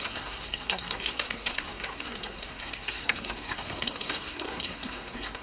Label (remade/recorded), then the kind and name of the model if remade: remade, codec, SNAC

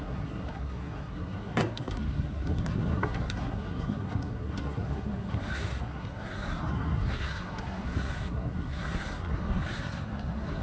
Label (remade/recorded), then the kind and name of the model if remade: remade, codec, SNAC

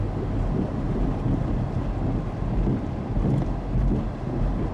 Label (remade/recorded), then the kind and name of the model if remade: recorded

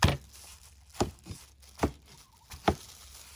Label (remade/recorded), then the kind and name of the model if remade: recorded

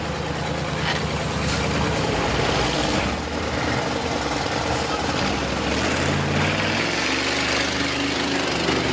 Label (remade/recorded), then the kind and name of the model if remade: recorded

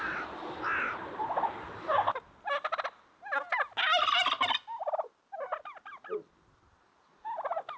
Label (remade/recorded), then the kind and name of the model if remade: recorded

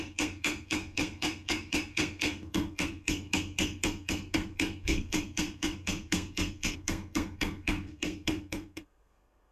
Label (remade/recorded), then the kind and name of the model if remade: remade, codec, SNAC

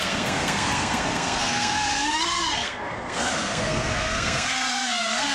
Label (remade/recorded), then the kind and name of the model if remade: remade, codec, SNAC